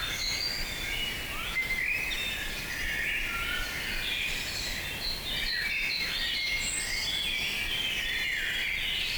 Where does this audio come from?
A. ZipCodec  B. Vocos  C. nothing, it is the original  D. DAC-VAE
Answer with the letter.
C